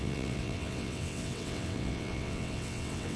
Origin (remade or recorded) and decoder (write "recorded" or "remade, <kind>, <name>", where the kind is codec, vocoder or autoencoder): remade, vocoder, WaveNeXt